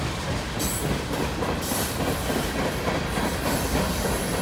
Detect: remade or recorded remade